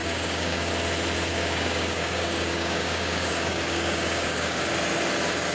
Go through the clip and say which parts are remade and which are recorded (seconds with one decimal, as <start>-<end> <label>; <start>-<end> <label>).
0.0-0.7 remade; 0.7-1.3 recorded; 1.3-4.6 remade; 4.6-5.5 recorded